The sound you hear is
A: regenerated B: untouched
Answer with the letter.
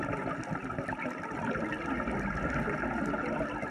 B